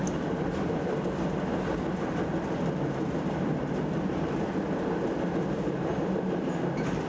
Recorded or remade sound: recorded